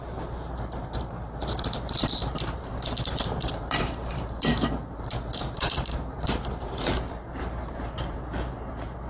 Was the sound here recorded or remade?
remade